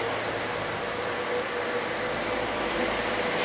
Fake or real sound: real